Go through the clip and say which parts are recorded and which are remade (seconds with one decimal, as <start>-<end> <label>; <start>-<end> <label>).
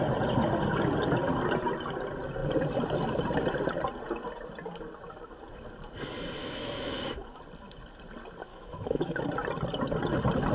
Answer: 0.0-6.4 recorded; 6.4-7.4 remade; 7.4-8.5 recorded; 8.5-9.2 remade; 9.2-10.5 recorded